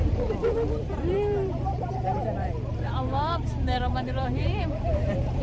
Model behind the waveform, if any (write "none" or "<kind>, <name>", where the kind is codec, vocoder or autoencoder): vocoder, BigVGAN v2